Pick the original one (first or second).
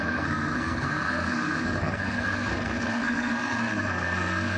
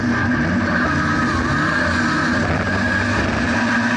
second